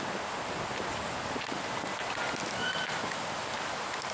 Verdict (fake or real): real